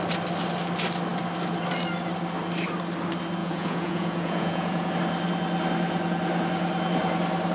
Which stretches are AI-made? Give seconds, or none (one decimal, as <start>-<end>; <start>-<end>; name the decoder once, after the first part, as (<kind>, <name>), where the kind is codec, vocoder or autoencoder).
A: 3.4-4.9 (vocoder, Vocos)